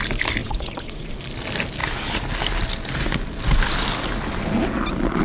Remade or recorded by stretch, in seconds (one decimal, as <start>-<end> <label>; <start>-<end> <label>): 0.0-0.4 recorded; 0.4-1.1 remade; 1.1-5.2 recorded